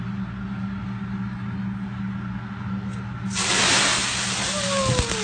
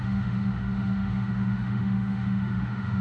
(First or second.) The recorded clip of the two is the first